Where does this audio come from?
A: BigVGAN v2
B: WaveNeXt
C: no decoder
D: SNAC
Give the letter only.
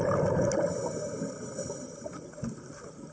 C